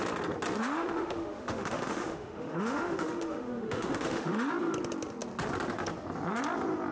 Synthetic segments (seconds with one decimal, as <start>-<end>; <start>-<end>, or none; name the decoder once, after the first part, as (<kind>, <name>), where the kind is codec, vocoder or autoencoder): 0.6-4.5 (autoencoder, DAC-VAE)